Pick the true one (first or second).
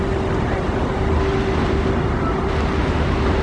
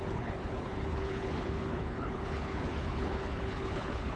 first